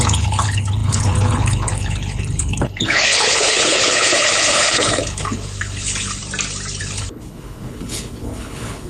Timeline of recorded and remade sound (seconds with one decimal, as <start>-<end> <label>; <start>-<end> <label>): 0.0-6.2 remade; 6.2-6.8 recorded; 6.8-8.9 remade